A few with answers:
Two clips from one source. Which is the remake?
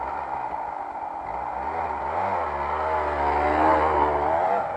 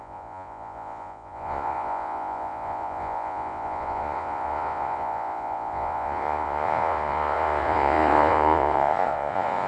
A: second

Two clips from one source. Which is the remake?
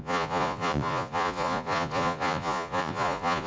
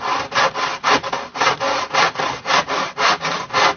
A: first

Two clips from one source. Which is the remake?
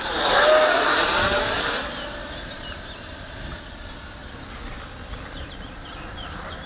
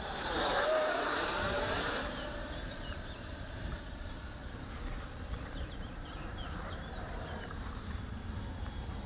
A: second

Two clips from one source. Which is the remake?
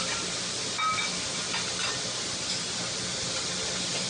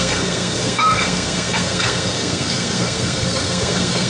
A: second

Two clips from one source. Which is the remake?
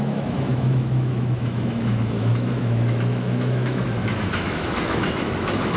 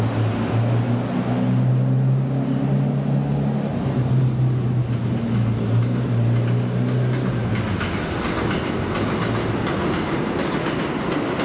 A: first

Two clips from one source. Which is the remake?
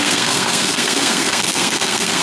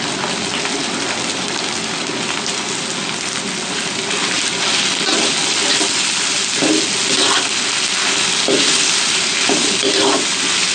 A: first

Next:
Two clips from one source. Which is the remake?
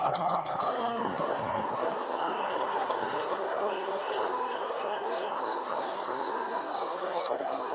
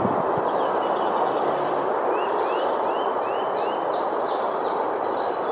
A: first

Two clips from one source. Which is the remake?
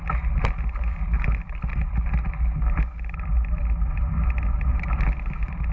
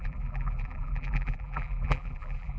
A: second